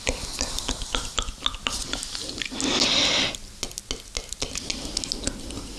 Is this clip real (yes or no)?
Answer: yes